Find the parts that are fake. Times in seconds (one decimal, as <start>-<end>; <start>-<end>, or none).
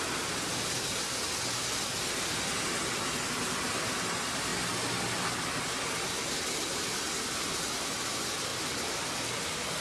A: none